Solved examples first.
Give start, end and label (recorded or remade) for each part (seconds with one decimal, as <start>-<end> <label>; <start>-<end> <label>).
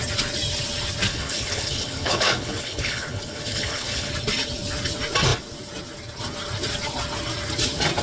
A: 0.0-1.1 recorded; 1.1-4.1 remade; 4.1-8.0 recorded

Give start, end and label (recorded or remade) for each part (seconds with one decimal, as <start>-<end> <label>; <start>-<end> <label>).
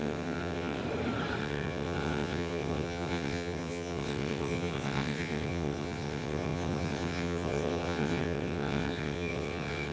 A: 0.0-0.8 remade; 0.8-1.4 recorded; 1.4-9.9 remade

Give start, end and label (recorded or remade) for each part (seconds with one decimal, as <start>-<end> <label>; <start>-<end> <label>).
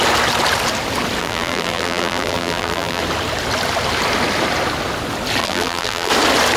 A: 0.0-1.2 recorded; 1.2-3.0 remade; 3.0-5.4 recorded; 5.4-6.1 remade; 6.1-6.6 recorded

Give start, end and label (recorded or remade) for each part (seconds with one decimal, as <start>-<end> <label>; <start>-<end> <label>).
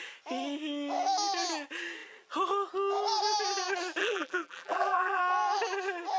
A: 0.0-4.0 recorded; 4.0-5.2 remade; 5.2-6.2 recorded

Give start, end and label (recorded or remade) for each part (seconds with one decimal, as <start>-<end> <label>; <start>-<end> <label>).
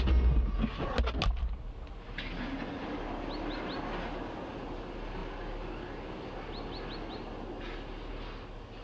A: 0.0-8.8 recorded